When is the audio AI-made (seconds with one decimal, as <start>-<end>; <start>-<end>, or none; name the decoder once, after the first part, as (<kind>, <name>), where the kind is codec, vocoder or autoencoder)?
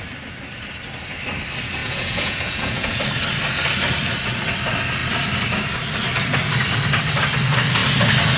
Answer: 1.8-3.0 (vocoder, Vocos)